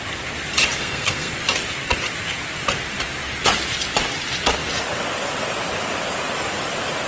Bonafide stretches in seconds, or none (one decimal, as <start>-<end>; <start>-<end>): 0.0-0.8; 1.3-7.1